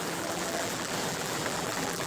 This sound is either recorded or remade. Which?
remade